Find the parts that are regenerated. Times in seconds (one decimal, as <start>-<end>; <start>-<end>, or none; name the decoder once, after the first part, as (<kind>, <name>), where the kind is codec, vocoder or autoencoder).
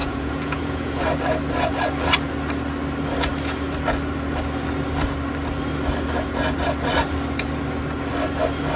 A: 0.0-1.0 (vocoder, Vocos)